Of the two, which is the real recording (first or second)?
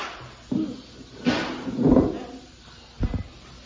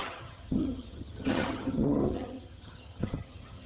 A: first